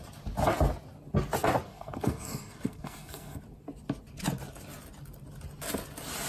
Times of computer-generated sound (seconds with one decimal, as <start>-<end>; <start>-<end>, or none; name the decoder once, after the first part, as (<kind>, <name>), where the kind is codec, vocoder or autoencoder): 1.7-3.4 (codec, SNAC)